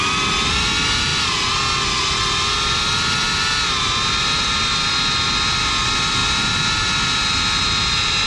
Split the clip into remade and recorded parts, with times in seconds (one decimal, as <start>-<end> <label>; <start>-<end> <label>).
0.0-8.3 recorded